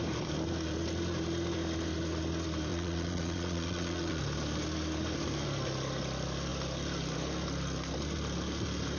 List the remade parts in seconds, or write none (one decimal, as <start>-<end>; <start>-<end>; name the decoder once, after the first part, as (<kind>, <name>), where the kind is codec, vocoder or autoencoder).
2.7-4.2 (vocoder, Vocos)